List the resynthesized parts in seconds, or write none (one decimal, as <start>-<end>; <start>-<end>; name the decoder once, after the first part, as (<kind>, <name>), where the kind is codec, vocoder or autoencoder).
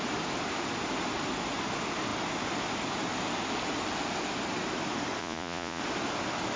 5.2-5.8 (vocoder, Vocos)